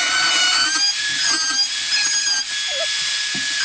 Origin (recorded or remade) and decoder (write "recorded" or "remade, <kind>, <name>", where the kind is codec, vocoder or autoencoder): recorded